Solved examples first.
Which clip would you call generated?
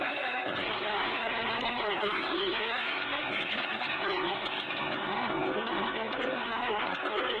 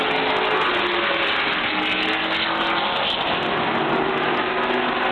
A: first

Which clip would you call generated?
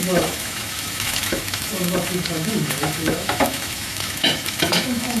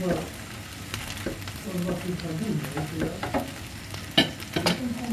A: first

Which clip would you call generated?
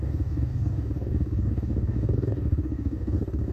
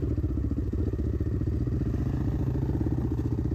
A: first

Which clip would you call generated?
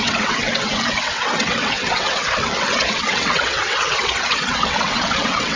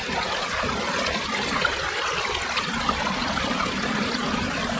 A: first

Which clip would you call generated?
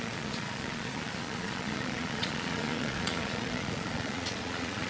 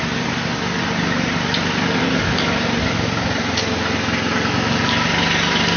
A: first